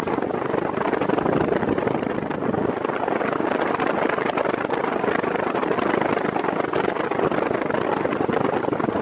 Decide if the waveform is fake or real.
real